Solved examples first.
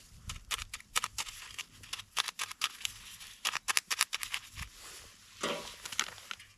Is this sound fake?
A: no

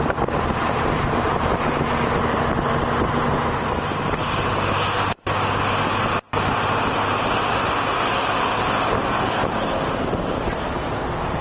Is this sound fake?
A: no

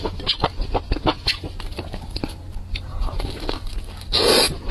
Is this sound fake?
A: no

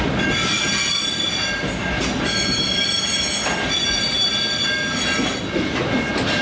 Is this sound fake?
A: no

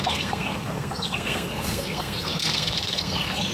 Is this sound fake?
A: yes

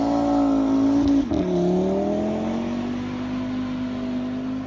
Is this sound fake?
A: no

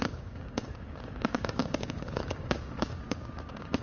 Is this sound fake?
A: yes